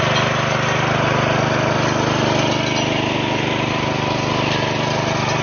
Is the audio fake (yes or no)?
no